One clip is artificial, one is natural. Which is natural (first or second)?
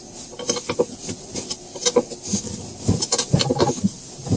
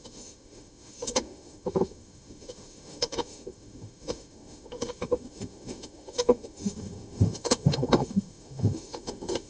first